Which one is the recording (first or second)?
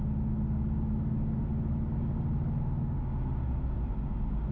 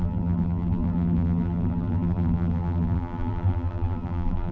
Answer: first